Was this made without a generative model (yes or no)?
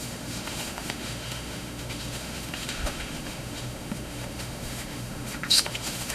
no